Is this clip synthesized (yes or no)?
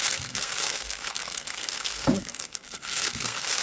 yes